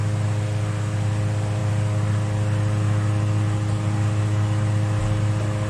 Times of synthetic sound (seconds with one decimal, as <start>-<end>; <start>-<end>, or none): none